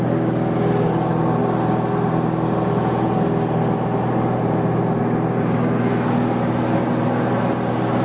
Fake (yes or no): no